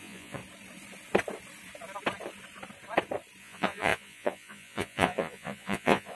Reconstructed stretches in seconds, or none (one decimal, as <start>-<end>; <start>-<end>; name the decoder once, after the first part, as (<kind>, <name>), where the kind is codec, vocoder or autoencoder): 0.0-0.4 (vocoder, Vocos); 3.4-6.1